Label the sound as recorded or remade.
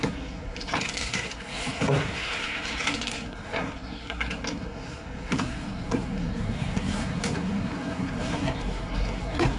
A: remade